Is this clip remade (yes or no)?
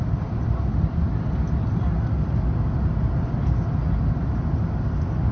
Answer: no